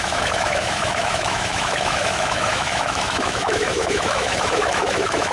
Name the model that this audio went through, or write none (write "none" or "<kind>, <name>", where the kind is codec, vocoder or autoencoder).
autoencoder, DAC-VAE